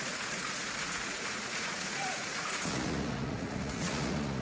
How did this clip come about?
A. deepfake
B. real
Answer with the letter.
A